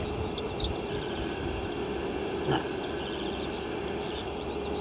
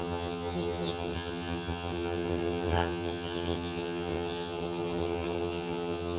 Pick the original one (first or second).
first